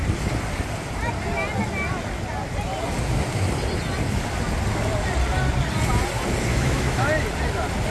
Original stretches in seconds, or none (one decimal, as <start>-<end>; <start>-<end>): 0.0-6.5; 7.1-7.9

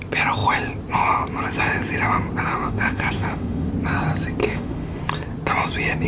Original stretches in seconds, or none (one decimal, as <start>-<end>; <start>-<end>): 0.0-2.5; 3.7-4.4; 5.0-6.1

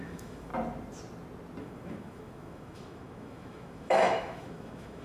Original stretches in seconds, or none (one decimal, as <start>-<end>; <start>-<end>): 0.5-1.6

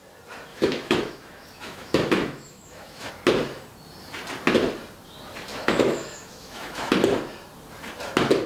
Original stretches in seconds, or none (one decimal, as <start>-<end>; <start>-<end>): 0.0-0.5; 3.1-5.5; 6.9-8.5

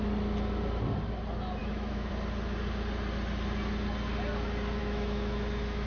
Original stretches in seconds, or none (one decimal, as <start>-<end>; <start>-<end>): 0.0-1.6; 2.1-4.8

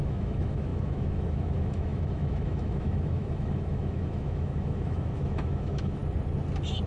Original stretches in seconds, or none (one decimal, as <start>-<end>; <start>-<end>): 6.0-6.9